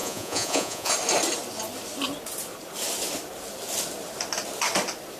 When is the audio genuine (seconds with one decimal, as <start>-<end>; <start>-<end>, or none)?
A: 0.9-5.2